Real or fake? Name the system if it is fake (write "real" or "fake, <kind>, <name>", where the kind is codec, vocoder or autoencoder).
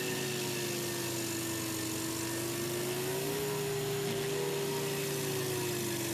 real